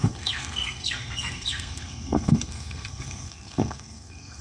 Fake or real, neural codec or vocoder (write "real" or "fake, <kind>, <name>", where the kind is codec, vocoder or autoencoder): fake, codec, SNAC